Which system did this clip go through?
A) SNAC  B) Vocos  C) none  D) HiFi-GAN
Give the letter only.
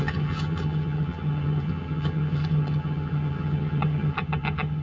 D